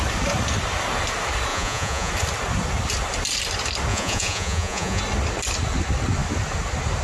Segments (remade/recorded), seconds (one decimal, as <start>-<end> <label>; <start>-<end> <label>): 0.0-1.5 recorded; 1.5-2.1 remade; 2.1-3.9 recorded; 3.9-5.0 remade; 5.0-7.0 recorded